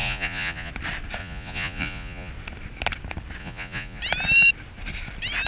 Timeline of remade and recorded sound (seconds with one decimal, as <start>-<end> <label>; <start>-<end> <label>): 0.0-0.7 remade; 0.7-1.2 recorded; 1.2-2.3 remade; 2.3-3.4 recorded; 3.4-4.0 remade; 4.0-5.5 recorded